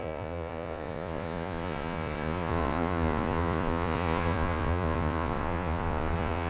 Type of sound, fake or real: fake